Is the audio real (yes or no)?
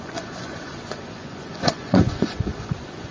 no